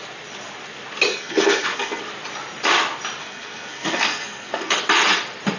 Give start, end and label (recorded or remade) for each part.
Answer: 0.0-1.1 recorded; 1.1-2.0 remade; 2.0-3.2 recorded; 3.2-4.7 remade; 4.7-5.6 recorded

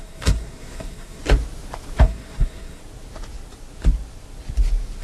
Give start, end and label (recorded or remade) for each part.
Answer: 0.0-1.2 remade; 1.2-2.0 recorded; 2.0-2.8 remade; 2.8-5.0 recorded

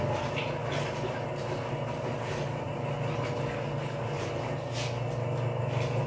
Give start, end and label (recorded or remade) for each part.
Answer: 0.0-6.1 recorded

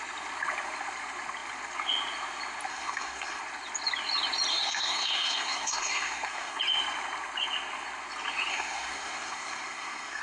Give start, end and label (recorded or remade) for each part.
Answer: 0.0-2.7 recorded; 2.7-3.4 remade; 3.4-4.5 recorded; 4.5-6.6 remade; 6.6-8.5 recorded; 8.5-10.2 remade